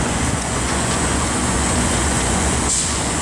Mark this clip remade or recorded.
remade